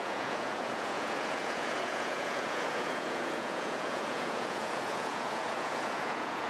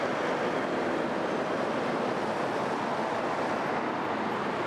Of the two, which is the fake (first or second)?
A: first